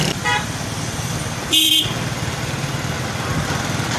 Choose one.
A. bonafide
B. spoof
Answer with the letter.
B